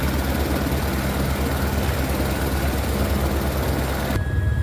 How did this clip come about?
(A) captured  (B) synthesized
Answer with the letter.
A